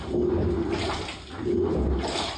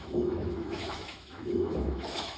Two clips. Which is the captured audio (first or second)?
first